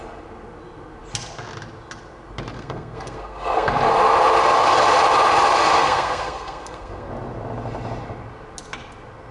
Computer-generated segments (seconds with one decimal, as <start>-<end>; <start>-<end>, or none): 2.5-3.7; 5.8-7.1